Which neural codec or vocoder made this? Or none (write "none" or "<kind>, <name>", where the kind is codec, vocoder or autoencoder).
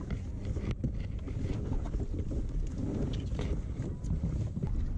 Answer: none